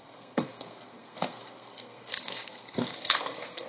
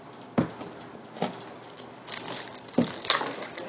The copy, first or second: first